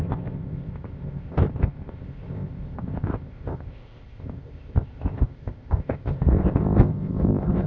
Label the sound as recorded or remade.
remade